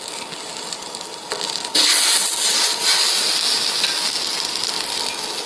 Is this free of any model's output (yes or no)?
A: yes